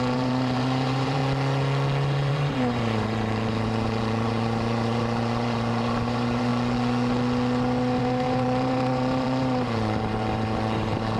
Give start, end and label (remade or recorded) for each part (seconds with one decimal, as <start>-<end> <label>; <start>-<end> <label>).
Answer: 0.0-1.2 remade; 1.2-2.3 recorded; 2.3-6.5 remade; 6.5-8.0 recorded; 8.0-11.2 remade